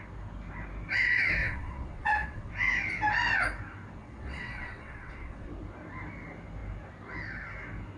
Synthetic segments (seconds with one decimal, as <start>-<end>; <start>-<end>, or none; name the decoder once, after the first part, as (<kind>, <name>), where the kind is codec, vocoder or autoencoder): 1.4-2.5 (vocoder, WaveNeXt); 4.0-5.5